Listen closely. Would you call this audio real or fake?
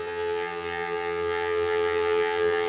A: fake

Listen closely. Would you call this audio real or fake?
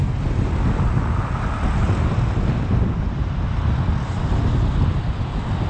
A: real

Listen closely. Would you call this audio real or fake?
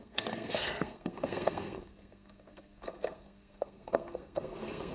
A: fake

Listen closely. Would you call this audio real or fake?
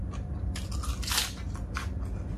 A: real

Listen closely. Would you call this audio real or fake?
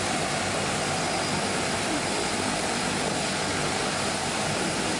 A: fake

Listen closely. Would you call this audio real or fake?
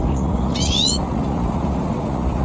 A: fake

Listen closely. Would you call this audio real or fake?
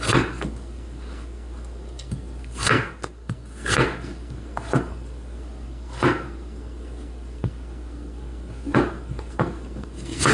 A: fake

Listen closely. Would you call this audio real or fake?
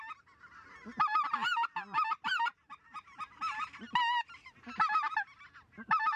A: real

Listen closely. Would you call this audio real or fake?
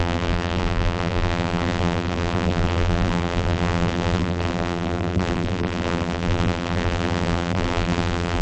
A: fake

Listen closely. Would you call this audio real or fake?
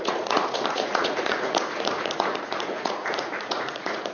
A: fake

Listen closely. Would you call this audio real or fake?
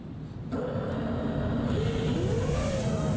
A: real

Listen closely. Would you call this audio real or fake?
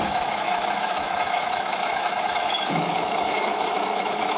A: fake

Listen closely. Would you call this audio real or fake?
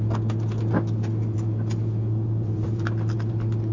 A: real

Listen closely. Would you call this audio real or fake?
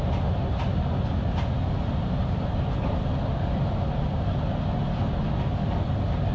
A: real